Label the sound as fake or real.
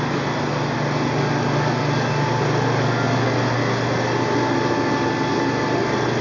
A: real